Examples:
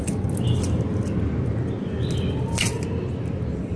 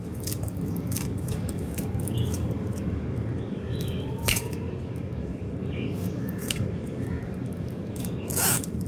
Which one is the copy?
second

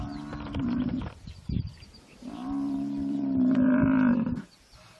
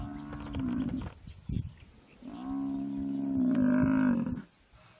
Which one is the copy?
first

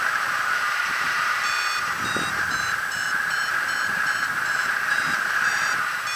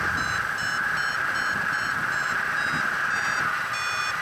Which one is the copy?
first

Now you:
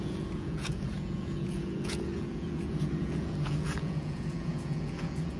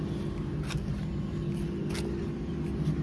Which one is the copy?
first